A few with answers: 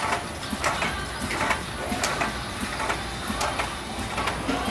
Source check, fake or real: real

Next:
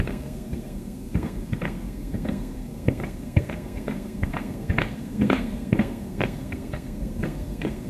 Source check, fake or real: fake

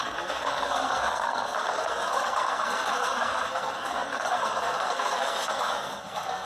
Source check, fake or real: fake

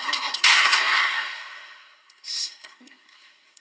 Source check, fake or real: fake